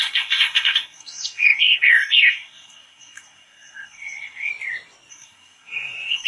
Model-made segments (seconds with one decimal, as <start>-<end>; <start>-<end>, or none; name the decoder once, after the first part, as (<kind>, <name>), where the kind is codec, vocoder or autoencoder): 0.0-4.5 (codec, SNAC); 5.1-6.3